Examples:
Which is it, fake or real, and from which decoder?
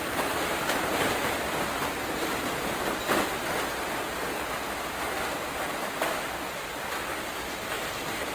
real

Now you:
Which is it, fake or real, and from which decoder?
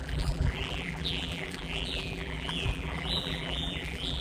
fake, vocoder, BigVGAN v2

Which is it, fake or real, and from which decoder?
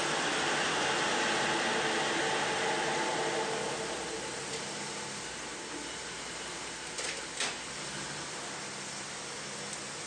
real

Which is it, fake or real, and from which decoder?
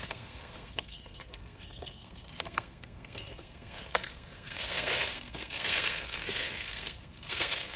fake, codec, SNAC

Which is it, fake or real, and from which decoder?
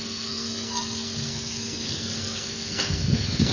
fake, codec, SNAC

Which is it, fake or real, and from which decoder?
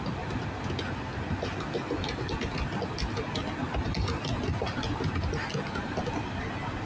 real